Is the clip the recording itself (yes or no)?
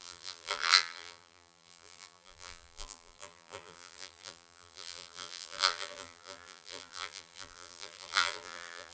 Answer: no